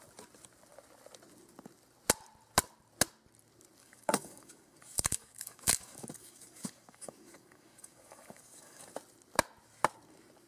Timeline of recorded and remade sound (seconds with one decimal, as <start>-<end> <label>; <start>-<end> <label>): 0.0-3.8 recorded; 3.8-8.9 remade; 8.9-10.5 recorded